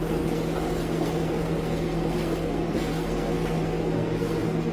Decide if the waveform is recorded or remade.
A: remade